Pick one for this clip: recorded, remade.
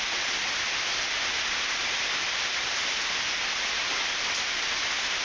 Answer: recorded